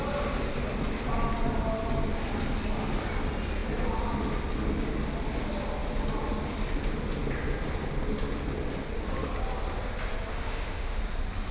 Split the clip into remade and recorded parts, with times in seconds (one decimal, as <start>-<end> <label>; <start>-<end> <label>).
0.0-10.3 recorded; 10.3-11.0 remade; 11.0-11.5 recorded